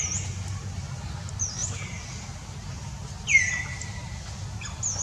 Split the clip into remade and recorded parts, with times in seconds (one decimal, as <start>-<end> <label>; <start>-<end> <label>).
0.0-5.0 recorded